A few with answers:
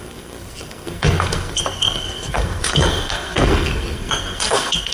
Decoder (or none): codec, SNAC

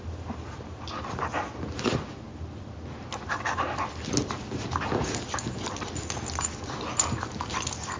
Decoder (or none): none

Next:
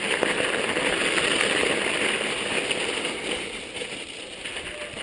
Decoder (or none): none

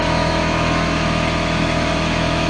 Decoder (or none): autoencoder, DAC-VAE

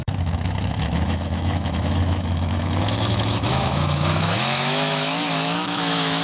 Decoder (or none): autoencoder, DAC-VAE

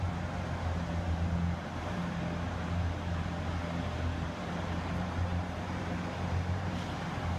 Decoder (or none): vocoder, BigVGAN v2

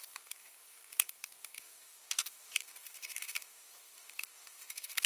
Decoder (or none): codec, DAC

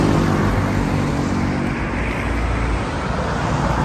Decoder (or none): none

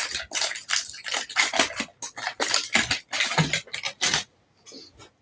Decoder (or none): none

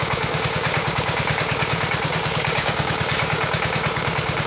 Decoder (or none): codec, DAC